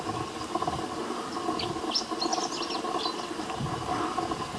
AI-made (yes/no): no